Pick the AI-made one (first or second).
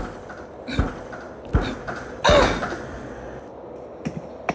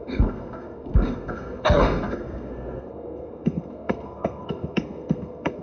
second